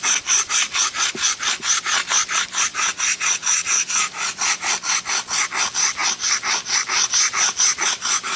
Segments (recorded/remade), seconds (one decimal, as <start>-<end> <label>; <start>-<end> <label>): 0.0-2.7 recorded; 2.7-4.7 remade; 4.7-8.4 recorded